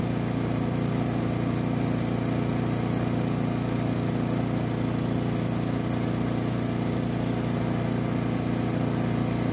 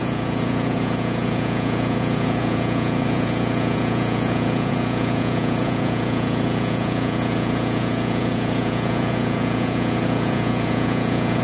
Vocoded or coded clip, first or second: second